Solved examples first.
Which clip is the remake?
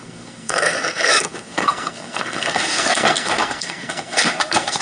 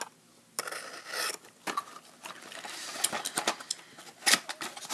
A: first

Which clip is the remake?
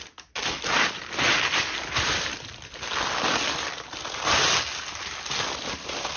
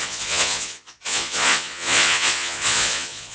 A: second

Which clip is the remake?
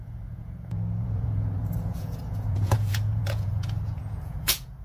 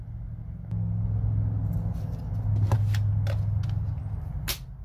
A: first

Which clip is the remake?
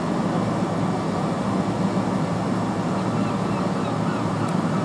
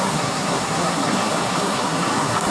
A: second